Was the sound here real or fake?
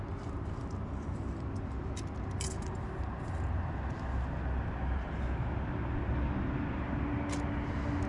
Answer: real